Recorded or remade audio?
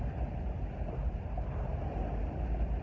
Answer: recorded